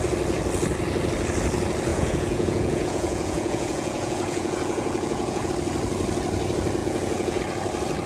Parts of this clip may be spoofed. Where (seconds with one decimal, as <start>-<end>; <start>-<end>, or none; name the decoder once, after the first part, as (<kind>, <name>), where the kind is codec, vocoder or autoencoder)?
1.9-5.5 (vocoder, Vocos); 6.8-7.4